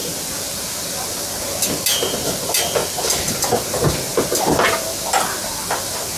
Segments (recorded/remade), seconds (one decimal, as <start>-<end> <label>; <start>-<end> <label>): 0.0-6.2 recorded